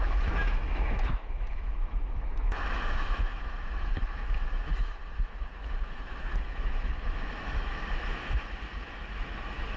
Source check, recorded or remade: remade